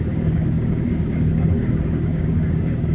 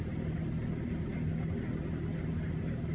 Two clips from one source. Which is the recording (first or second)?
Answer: second